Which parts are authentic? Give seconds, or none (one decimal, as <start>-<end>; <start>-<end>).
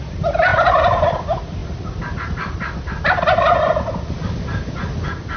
0.0-5.4